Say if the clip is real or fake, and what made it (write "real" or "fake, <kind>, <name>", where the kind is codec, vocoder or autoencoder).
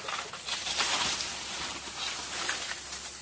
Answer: real